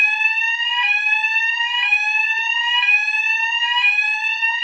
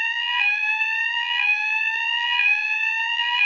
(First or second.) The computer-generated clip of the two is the second